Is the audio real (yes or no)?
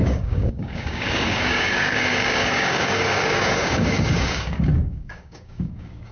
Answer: no